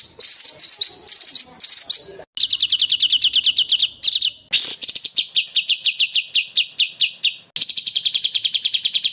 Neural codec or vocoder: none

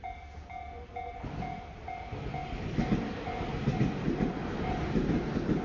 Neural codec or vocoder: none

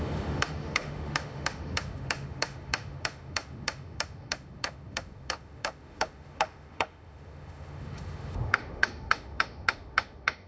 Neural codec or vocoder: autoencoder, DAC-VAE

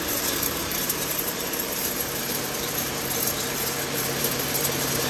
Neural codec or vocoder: vocoder, BigVGAN v2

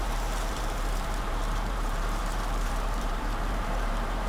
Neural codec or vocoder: vocoder, BigVGAN v2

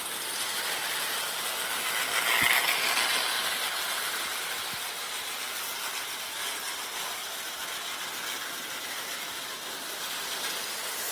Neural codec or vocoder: none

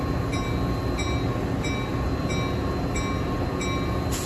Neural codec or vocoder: none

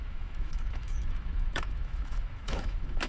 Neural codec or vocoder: autoencoder, DAC-VAE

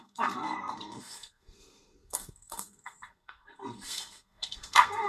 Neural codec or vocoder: codec, SNAC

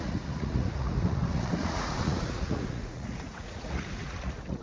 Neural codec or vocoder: vocoder, Vocos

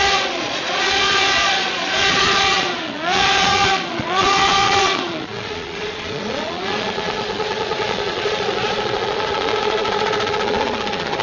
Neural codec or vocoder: vocoder, Vocos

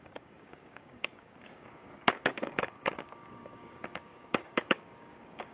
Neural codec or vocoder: codec, DAC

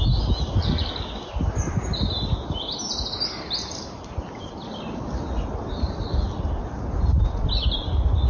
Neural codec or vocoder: none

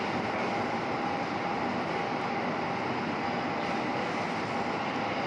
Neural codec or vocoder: none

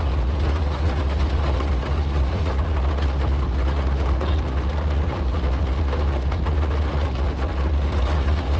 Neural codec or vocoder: vocoder, Vocos